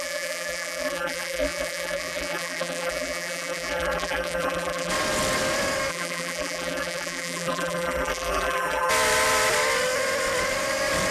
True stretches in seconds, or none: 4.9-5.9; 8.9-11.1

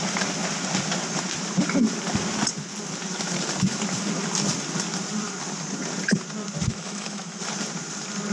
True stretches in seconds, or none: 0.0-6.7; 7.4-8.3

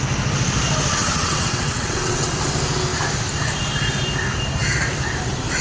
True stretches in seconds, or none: 0.0-1.0; 2.3-5.6

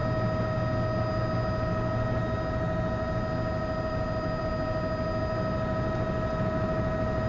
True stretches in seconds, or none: 0.0-7.3

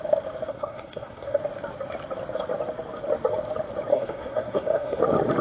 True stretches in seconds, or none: 0.0-0.5; 1.4-3.9; 5.0-5.4